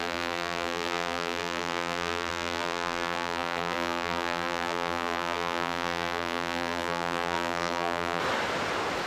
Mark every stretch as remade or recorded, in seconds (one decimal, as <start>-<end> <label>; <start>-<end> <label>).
0.0-8.2 remade; 8.2-9.1 recorded